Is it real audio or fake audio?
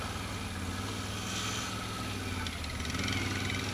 real